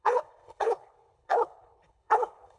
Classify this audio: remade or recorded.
remade